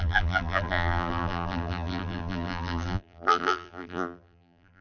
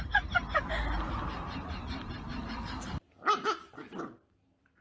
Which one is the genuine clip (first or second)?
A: second